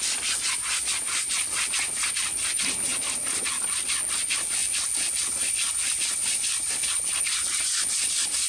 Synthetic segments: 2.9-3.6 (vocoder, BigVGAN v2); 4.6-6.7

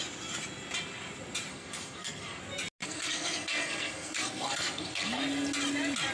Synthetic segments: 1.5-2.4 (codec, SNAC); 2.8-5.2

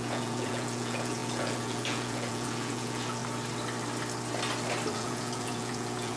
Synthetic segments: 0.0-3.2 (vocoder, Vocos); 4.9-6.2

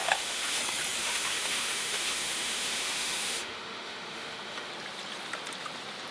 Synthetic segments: 0.0-0.6 (autoencoder, DAC-VAE); 1.0-4.7

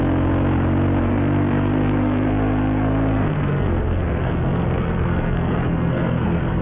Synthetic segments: 1.0-6.6 (codec, SNAC)

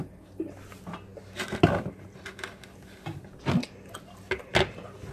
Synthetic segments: none

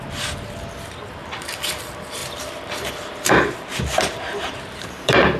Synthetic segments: 1.2-1.8 (vocoder, BigVGAN v2); 2.2-5.4

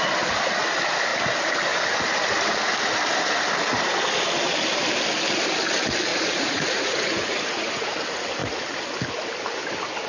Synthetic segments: 6.1-8.0 (vocoder, Vocos)